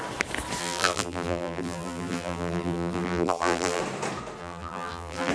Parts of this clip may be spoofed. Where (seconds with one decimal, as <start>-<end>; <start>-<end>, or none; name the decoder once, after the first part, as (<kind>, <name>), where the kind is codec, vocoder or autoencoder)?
0.6-3.8 (vocoder, BigVGAN v2); 4.4-5.3